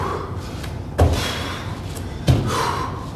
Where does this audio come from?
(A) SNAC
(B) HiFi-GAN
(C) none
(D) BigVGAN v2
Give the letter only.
D